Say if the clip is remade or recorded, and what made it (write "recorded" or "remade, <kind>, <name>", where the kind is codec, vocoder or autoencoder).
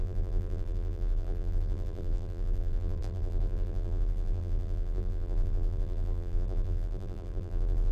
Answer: remade, vocoder, BigVGAN v2